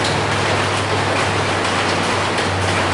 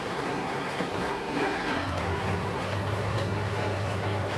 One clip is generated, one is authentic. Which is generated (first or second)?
second